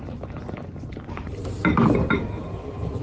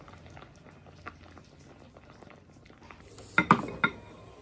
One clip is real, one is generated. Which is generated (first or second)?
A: first